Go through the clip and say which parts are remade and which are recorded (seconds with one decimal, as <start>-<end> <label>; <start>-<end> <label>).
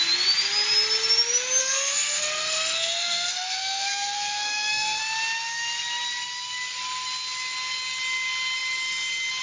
0.0-1.6 recorded; 1.6-5.0 remade; 5.0-9.4 recorded